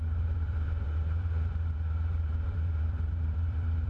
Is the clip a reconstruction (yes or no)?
yes